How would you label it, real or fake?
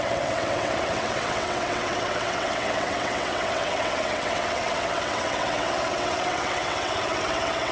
fake